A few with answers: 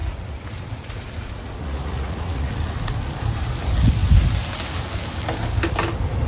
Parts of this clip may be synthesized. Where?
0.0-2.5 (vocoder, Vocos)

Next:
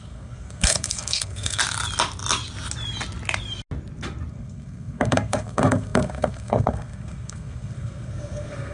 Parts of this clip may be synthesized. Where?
0.0-1.6 (codec, SNAC); 4.3-8.7

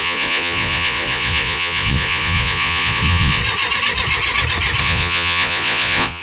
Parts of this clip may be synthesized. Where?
0.0-3.4 (vocoder, Vocos); 4.8-6.2

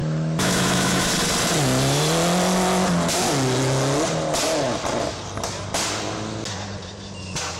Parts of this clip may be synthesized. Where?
0.0-1.1 (autoencoder, DAC-VAE)

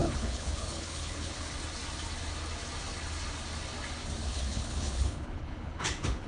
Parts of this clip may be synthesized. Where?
0.0-1.5 (codec, HILCodec); 4.2-6.3

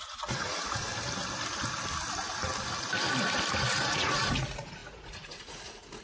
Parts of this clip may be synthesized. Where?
0.0-0.9 (vocoder, Vocos); 3.8-6.0

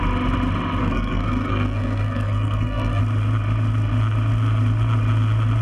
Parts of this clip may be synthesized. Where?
0.8-3.0 (codec, SNAC)